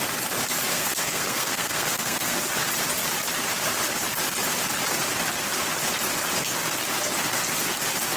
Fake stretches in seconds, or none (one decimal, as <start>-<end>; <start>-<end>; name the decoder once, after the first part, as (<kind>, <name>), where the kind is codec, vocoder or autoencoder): 0.7-2.4 (codec, SNAC)